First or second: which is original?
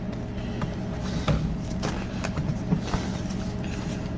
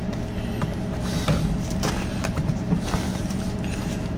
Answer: first